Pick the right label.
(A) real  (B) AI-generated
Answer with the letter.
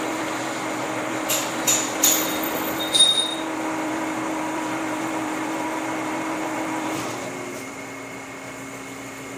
B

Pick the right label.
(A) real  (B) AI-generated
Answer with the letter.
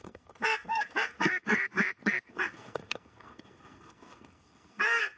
B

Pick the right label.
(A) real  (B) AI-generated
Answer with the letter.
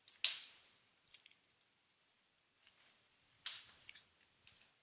A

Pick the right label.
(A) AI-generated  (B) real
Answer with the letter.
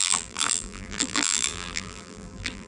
A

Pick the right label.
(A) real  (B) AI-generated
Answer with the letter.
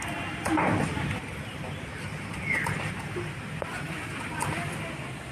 A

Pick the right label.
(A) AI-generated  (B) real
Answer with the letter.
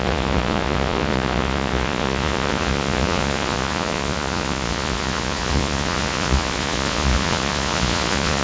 A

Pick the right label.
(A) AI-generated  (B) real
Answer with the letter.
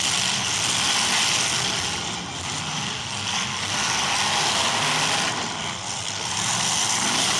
B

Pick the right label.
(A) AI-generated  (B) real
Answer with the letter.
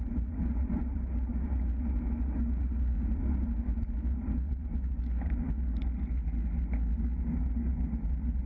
B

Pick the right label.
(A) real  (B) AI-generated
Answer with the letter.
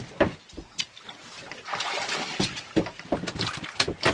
A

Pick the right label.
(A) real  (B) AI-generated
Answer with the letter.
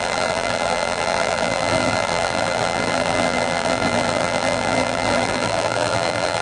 B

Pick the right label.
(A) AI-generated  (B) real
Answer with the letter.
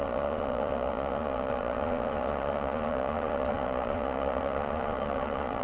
A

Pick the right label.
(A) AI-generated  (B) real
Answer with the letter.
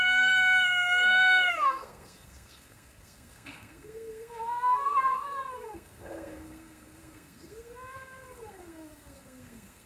A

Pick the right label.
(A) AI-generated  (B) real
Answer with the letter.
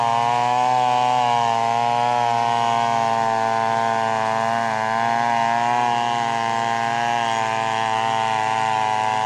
B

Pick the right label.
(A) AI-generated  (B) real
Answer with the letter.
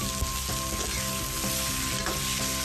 B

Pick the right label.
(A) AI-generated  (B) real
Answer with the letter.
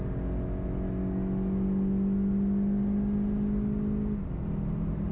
B